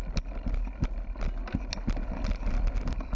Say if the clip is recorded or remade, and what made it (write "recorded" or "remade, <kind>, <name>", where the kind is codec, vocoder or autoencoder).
recorded